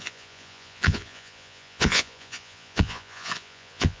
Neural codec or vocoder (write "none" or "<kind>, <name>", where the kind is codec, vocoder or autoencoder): vocoder, Vocos